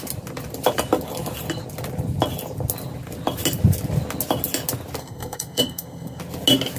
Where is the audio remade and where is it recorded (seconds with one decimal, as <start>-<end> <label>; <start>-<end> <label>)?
0.0-5.0 recorded; 5.0-6.2 remade; 6.2-6.8 recorded